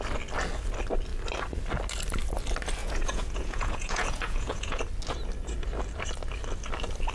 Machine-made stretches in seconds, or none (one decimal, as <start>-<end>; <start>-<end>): 2.8-4.8